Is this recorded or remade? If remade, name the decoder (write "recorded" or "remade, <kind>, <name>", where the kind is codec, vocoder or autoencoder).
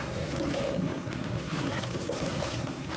remade, codec, SNAC